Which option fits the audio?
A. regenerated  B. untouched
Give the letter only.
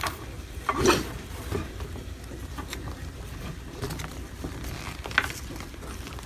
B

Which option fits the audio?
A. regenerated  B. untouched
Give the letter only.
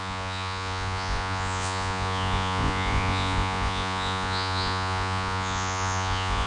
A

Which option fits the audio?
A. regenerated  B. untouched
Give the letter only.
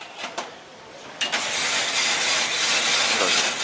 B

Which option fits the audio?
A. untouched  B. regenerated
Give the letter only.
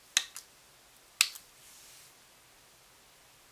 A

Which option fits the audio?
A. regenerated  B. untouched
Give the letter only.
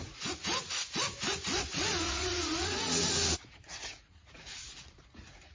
A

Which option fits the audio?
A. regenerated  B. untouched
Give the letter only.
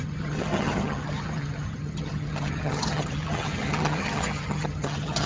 A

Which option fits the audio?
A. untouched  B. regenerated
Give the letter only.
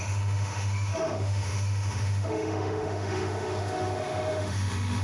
B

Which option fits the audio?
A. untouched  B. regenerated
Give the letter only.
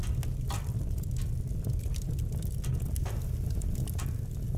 A